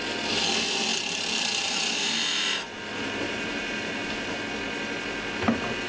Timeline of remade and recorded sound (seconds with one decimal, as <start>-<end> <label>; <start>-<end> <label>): 0.0-0.9 recorded; 0.9-4.4 remade; 4.4-5.9 recorded